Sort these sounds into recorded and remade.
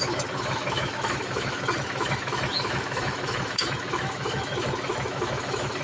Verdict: remade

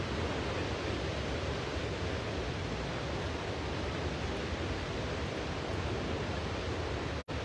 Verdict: recorded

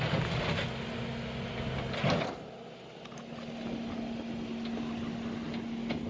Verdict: recorded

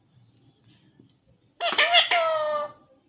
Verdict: recorded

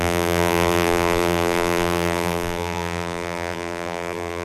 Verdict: remade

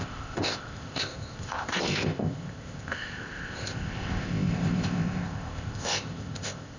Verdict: remade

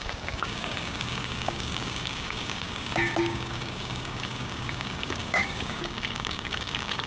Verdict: remade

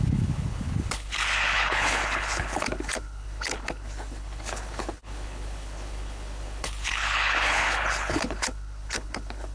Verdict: remade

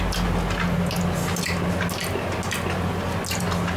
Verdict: recorded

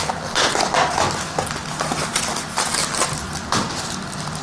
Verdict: recorded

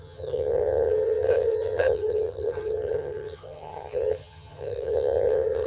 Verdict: remade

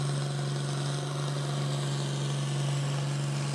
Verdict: recorded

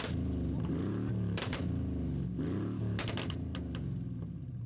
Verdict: recorded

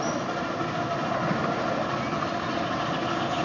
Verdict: recorded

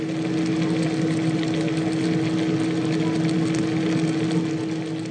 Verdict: recorded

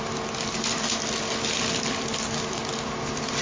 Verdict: recorded